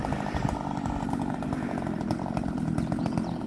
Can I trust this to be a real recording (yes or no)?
yes